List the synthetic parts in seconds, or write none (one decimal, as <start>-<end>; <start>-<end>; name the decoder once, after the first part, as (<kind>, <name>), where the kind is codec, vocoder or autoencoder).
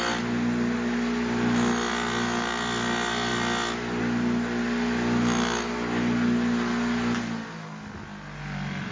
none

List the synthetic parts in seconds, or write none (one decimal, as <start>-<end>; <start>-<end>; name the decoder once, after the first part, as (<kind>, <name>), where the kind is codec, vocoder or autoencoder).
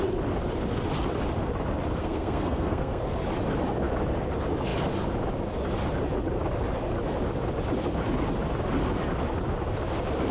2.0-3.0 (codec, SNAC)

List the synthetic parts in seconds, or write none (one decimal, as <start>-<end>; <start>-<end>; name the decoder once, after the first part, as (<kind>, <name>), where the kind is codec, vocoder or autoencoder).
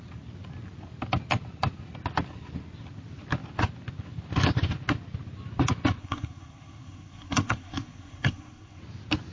6.0-8.8 (codec, SNAC)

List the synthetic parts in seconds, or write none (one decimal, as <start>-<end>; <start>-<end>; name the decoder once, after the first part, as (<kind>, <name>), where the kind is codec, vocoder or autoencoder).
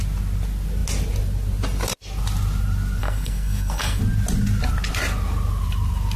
3.0-4.0 (codec, SNAC)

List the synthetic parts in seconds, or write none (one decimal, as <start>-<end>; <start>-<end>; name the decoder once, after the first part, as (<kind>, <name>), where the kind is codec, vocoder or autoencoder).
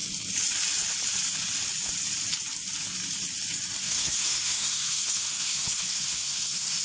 3.8-6.8 (codec, SNAC)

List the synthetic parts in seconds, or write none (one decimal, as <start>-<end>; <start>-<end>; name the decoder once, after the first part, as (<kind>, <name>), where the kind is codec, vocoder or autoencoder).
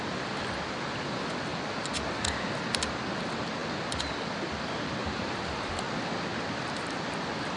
none